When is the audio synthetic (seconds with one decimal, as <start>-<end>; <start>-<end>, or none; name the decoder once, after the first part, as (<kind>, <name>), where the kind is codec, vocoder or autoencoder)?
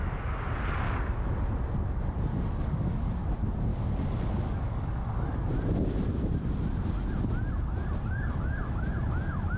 2.3-3.1 (codec, DAC); 3.7-5.5